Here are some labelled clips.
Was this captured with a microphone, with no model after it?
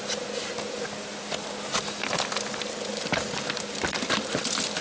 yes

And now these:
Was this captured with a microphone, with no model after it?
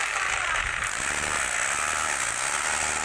yes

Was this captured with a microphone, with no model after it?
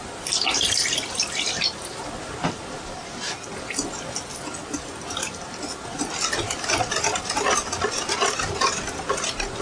yes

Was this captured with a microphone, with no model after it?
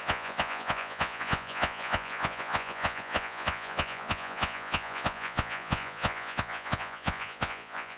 no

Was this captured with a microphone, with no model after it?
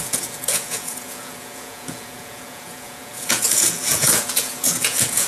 no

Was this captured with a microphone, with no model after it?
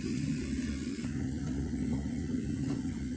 no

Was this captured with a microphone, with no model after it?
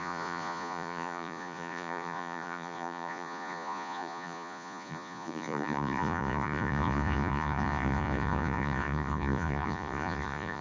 no